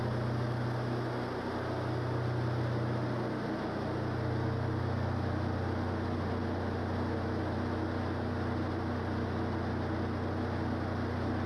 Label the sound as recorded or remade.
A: recorded